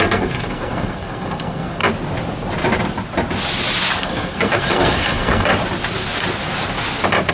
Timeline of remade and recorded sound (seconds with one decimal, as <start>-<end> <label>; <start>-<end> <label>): 0.0-1.8 remade; 1.8-4.0 recorded; 4.0-5.5 remade; 5.5-7.3 recorded